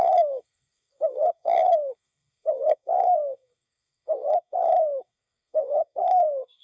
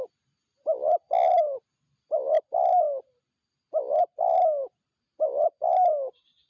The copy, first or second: first